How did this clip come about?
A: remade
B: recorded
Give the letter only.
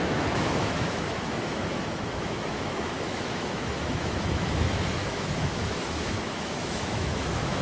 A